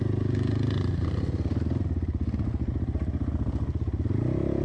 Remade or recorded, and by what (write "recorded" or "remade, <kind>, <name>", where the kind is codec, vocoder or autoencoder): recorded